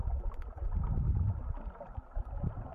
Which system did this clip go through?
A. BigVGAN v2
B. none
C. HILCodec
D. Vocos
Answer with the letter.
B